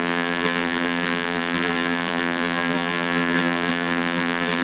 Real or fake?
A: fake